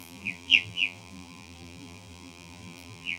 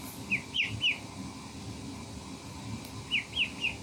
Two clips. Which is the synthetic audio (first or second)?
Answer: first